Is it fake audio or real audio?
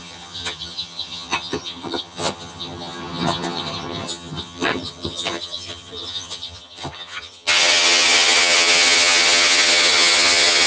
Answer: fake